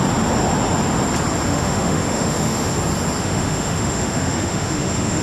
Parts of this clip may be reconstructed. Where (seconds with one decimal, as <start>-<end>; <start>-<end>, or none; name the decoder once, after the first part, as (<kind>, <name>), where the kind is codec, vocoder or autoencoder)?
1.5-2.7 (autoencoder, DAC-VAE); 3.2-5.2